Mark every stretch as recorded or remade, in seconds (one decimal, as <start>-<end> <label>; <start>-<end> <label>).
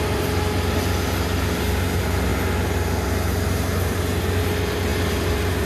0.0-5.7 recorded